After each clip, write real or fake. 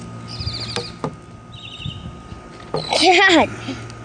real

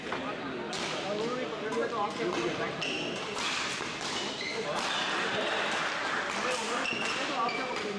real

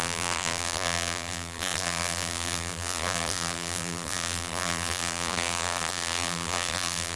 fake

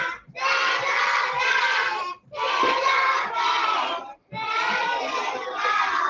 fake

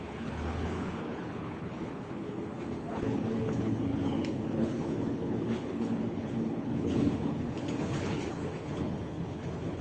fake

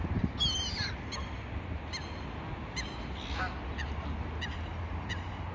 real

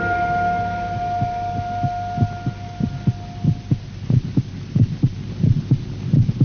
real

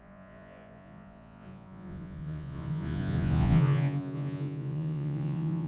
fake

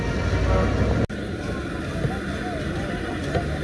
real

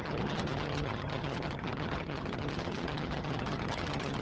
fake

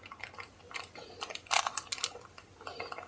real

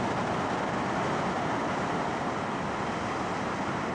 real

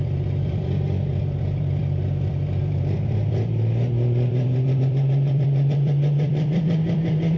fake